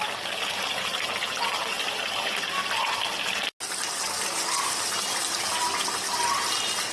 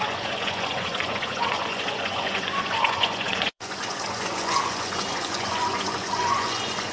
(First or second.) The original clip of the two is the first